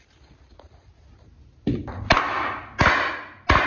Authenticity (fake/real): real